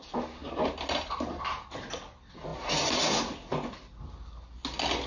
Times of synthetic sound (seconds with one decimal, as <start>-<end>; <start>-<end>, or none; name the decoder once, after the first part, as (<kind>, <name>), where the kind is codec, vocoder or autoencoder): none